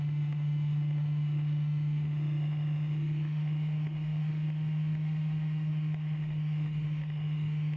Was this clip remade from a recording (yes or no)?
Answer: yes